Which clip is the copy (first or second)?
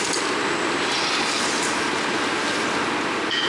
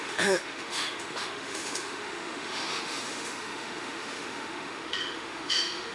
second